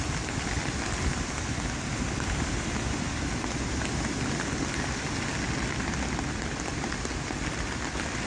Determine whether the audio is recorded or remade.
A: recorded